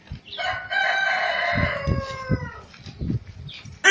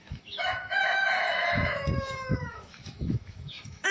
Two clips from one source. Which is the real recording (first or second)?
first